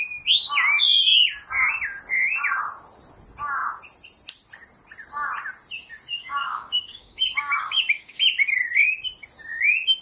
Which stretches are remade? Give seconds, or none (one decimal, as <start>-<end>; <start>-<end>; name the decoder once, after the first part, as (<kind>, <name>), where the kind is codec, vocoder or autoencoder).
6.1-8.2 (codec, DAC)